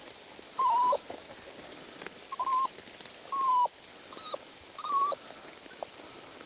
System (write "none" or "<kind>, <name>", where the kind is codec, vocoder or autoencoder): none